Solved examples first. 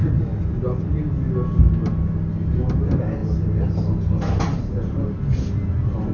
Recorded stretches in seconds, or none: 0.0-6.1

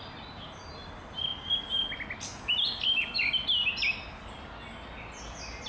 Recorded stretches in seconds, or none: 0.0-5.7

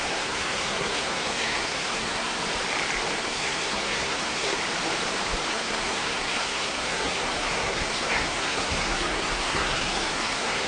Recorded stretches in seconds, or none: 2.4-3.2; 4.6-5.5

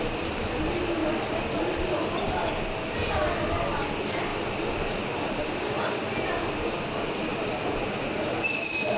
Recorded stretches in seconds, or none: 0.0-9.0

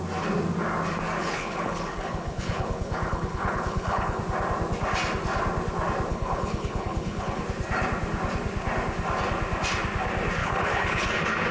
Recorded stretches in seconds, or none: 0.0-1.2; 4.2-6.1; 7.4-10.4; 11.1-11.5

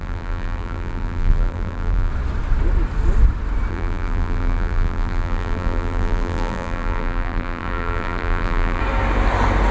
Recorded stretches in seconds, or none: 2.1-3.7; 8.8-9.7

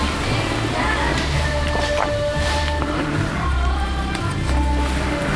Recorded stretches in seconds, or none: 0.0-1.1; 4.3-5.4

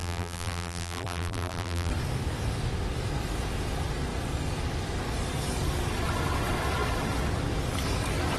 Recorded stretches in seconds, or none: 1.9-8.4